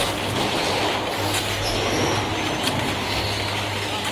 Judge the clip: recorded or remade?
recorded